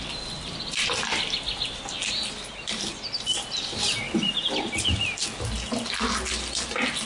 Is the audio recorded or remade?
recorded